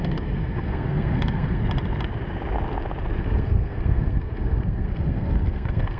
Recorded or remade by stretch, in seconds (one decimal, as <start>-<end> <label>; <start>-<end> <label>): 0.0-1.6 remade; 1.6-3.2 recorded; 3.2-6.0 remade